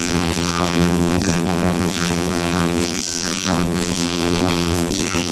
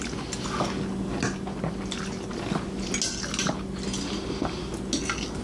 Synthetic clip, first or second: first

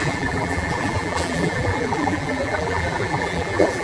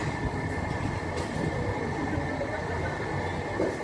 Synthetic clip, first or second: first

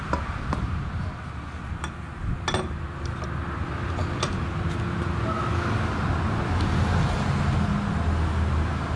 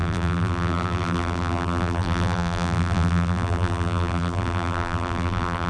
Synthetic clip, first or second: second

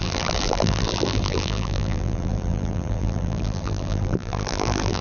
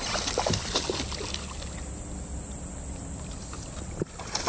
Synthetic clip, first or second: first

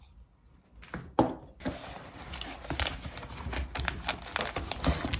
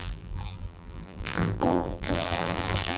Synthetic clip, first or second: second